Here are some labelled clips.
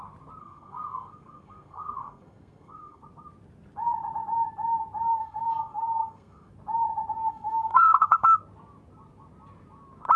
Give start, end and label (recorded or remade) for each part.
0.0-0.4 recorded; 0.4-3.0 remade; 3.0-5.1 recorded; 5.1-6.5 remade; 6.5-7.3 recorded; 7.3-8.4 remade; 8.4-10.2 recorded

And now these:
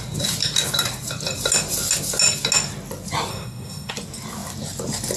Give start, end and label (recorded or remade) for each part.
0.0-3.3 recorded; 3.3-3.9 remade; 3.9-5.2 recorded

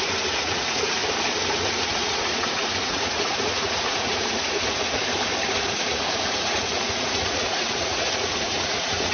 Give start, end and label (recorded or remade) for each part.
0.0-1.0 remade; 1.0-1.5 recorded; 1.5-5.0 remade; 5.0-5.5 recorded; 5.5-9.1 remade